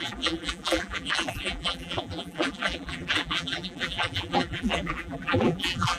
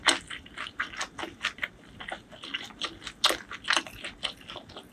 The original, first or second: second